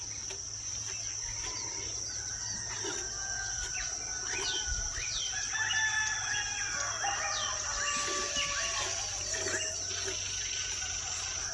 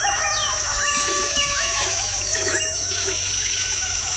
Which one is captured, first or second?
first